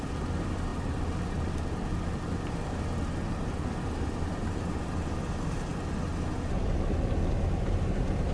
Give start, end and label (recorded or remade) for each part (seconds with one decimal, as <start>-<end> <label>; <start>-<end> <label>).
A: 0.0-5.7 remade; 5.7-7.4 recorded; 7.4-8.3 remade